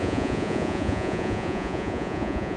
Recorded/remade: remade